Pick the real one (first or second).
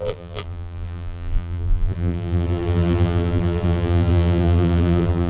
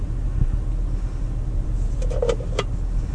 second